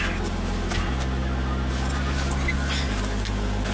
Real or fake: real